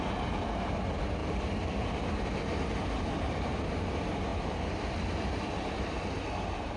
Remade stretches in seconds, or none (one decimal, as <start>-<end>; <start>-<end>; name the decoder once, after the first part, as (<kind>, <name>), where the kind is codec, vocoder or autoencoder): 1.2-3.9 (vocoder, BigVGAN v2); 4.3-6.8